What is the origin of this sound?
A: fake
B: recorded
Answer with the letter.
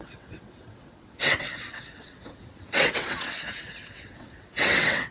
A